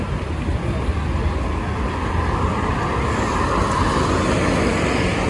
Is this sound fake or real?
real